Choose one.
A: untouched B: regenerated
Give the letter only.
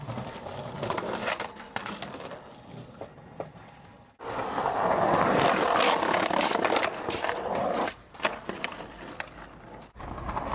A